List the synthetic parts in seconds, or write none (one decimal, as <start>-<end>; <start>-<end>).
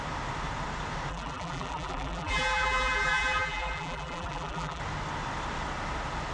1.1-4.8